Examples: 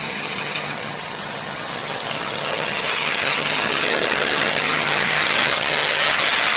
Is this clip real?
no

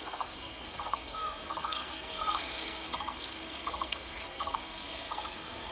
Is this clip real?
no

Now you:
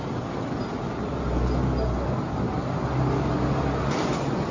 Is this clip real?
yes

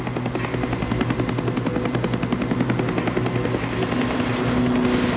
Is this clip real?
yes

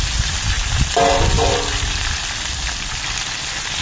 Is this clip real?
yes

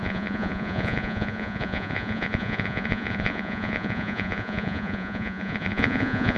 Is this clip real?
no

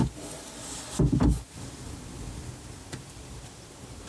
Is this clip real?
yes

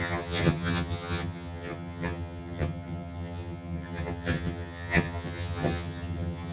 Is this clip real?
no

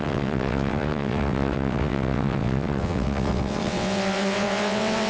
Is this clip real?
no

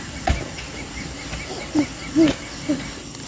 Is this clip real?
yes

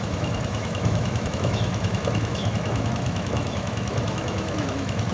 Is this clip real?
no